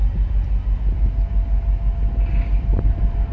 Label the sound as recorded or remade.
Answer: recorded